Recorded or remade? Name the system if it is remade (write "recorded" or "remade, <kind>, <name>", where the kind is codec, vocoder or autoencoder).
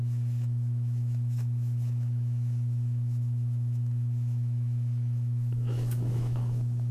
remade, autoencoder, DAC-VAE